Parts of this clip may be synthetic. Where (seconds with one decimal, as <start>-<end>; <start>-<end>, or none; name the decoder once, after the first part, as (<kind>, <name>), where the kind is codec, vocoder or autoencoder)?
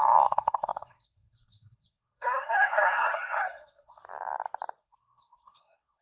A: 0.0-4.0 (codec, SNAC); 4.8-6.0